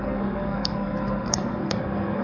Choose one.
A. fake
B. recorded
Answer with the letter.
A